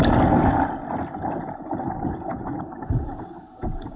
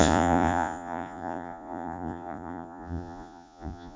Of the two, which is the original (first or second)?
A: first